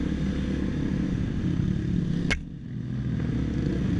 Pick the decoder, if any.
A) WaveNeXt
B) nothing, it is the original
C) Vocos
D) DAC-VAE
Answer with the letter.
B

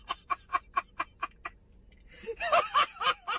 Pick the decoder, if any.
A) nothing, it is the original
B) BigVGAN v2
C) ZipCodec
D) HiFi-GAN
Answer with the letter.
A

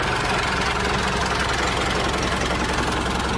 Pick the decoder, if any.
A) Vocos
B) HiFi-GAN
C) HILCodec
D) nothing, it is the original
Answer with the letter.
D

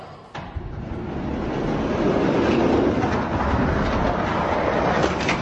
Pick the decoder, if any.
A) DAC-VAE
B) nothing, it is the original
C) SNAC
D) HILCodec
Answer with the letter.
B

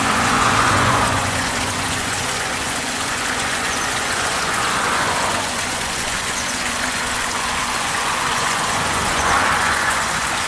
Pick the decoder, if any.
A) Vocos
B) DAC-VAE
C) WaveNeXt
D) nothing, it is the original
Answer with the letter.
A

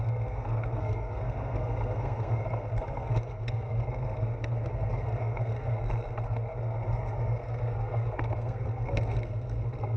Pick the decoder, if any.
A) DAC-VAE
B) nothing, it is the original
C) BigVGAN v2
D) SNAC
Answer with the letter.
D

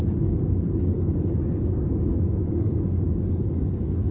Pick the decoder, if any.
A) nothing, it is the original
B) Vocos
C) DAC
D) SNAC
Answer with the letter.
C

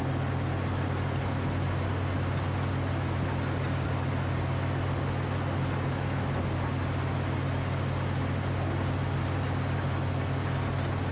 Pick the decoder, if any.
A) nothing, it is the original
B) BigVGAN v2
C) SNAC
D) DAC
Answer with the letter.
A